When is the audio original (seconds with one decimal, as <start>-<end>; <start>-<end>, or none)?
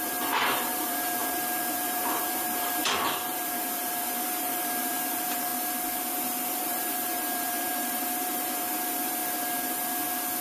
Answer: 5.5-6.2; 9.2-10.4